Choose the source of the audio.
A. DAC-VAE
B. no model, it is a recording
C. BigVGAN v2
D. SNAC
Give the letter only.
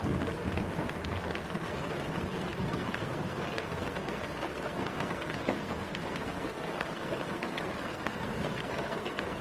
D